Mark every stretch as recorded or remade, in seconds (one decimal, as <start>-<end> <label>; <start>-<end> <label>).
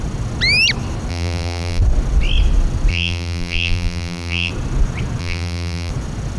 0.0-1.1 recorded; 1.1-1.8 remade; 1.8-2.9 recorded; 2.9-4.5 remade; 4.5-5.2 recorded; 5.2-5.9 remade; 5.9-6.4 recorded